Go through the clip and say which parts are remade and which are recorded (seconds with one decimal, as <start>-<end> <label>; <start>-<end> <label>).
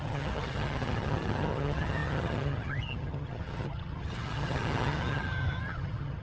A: 0.0-6.2 remade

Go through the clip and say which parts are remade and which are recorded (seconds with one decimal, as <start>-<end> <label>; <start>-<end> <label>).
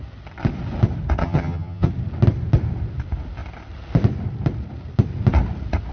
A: 0.0-1.2 recorded; 1.2-1.9 remade; 1.9-5.9 recorded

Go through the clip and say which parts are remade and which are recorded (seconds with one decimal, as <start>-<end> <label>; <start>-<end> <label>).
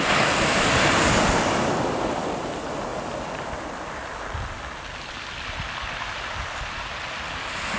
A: 0.0-7.8 recorded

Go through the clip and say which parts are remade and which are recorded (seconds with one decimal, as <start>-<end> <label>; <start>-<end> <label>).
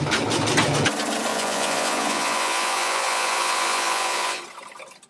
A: 0.0-1.3 recorded; 1.3-4.4 remade; 4.4-5.1 recorded